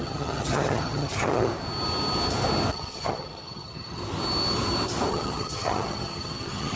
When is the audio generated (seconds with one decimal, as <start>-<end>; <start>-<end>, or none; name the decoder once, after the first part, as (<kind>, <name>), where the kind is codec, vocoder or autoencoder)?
0.0-1.5 (vocoder, HiFi-GAN); 2.7-4.0; 5.1-6.8